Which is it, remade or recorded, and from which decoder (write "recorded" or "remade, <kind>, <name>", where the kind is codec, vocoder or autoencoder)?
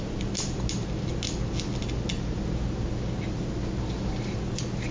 recorded